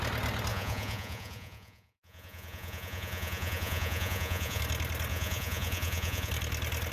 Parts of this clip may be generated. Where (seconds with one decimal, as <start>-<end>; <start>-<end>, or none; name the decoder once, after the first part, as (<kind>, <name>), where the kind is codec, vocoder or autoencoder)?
0.5-4.6 (vocoder, Vocos); 5.1-6.3